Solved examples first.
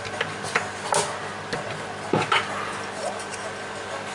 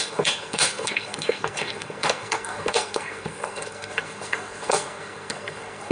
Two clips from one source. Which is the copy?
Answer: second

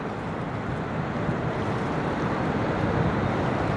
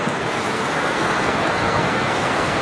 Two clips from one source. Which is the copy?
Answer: second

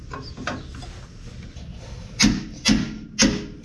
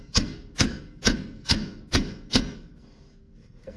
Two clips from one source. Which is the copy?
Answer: second